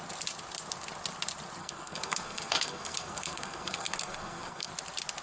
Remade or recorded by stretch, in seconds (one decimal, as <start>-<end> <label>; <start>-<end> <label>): 0.0-1.6 recorded; 1.6-4.7 remade; 4.7-5.2 recorded